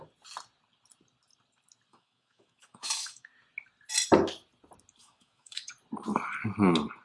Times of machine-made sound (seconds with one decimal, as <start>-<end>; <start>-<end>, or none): 1.9-3.3; 5.0-5.7